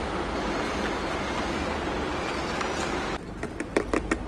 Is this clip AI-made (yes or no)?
no